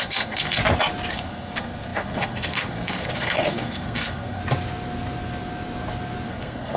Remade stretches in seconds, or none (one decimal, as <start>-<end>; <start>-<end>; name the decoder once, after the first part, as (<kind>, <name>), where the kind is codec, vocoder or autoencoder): 0.0-0.6 (codec, SNAC); 1.1-4.4; 6.3-6.8